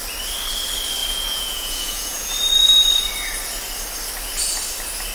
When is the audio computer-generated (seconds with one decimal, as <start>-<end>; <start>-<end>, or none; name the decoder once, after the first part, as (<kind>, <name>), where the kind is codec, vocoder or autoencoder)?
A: 1.0-2.3 (vocoder, Vocos)